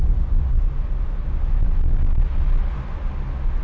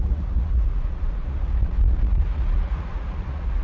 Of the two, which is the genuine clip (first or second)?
first